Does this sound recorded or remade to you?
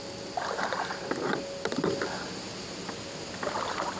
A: recorded